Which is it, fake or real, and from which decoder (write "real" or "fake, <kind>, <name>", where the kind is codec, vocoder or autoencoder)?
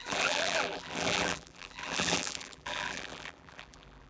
fake, vocoder, BigVGAN v2